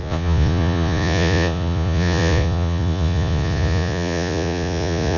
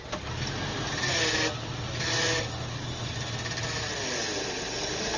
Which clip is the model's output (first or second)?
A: first